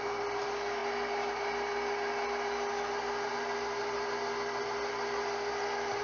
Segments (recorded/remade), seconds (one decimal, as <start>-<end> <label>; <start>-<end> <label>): 0.0-6.0 recorded